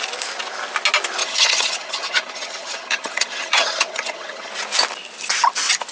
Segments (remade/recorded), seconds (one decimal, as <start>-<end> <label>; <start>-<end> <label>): 0.0-1.2 recorded; 1.2-4.5 remade; 4.5-5.9 recorded